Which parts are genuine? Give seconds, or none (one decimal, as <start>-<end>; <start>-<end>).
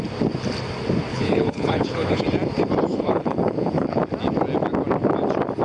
0.0-1.1; 2.2-2.9; 4.0-5.6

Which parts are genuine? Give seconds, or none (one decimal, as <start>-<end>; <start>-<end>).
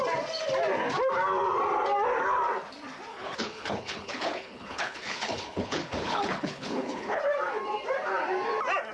0.0-3.1; 7.2-8.9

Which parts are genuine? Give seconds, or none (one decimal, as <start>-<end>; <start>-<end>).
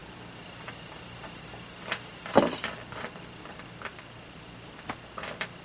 0.0-5.6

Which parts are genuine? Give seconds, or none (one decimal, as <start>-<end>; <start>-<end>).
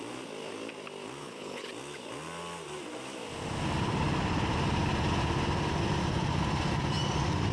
0.0-1.2; 1.7-7.5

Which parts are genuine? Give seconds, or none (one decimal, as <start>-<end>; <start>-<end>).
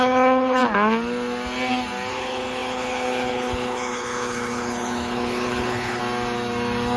0.6-2.1; 6.0-7.0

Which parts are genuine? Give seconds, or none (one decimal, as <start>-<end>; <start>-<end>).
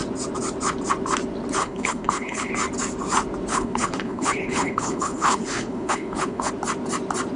0.0-1.6; 2.5-3.5; 6.5-7.4